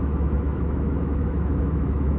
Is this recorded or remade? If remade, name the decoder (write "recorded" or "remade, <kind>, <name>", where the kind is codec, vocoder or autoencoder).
remade, autoencoder, DAC-VAE